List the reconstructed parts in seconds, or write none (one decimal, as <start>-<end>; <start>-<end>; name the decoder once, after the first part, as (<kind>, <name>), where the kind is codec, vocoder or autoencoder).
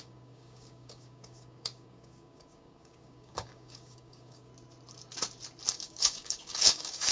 0.0-4.5 (codec, DAC); 5.7-7.1